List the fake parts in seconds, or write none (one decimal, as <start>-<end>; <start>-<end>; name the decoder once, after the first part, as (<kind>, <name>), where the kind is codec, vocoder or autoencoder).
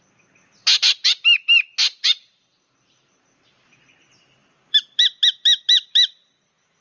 1.9-3.9 (vocoder, BigVGAN v2)